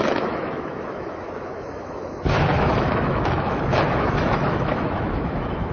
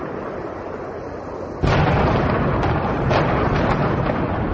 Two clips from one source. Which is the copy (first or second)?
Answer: first